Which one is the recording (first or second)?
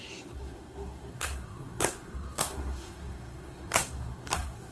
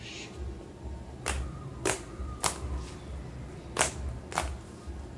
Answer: second